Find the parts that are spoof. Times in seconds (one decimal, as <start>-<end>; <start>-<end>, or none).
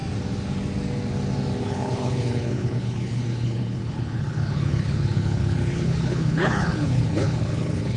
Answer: 1.6-8.0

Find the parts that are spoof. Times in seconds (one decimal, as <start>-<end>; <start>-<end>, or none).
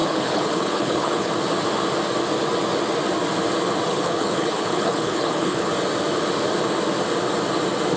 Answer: 0.0-1.3; 3.9-5.7